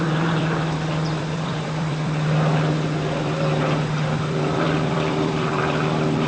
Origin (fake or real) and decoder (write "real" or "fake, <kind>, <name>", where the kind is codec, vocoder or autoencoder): fake, vocoder, BigVGAN v2